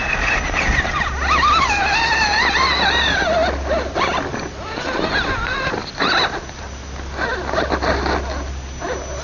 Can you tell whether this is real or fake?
real